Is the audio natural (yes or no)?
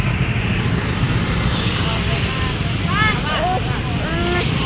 yes